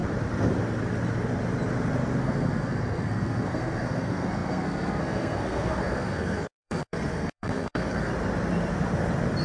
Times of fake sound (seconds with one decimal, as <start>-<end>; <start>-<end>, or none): 2.2-8.1